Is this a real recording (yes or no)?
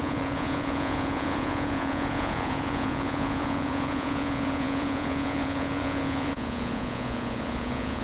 no